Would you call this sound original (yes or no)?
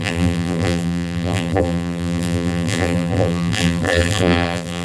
no